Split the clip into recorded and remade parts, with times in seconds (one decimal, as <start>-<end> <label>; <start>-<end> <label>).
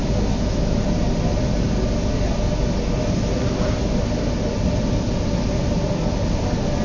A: 0.0-6.8 recorded